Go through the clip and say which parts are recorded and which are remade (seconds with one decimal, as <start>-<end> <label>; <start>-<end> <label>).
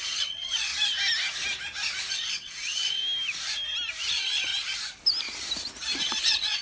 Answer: 0.0-0.7 remade; 0.7-2.1 recorded; 2.1-3.0 remade; 3.0-4.1 recorded; 4.1-4.5 remade; 4.5-6.0 recorded; 6.0-6.6 remade